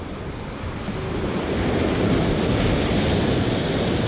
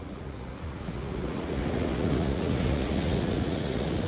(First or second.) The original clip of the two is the first